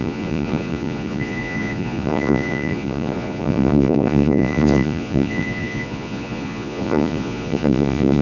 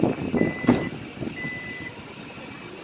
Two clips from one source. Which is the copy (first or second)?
first